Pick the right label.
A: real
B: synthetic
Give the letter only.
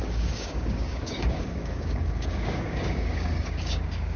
B